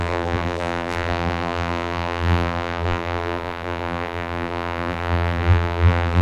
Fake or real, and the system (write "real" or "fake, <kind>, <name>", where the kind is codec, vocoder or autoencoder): fake, vocoder, BigVGAN v2